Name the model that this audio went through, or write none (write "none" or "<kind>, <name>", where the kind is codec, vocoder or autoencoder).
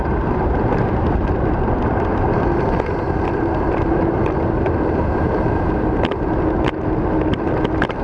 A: none